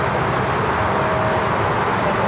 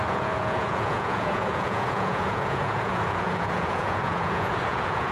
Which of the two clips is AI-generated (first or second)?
second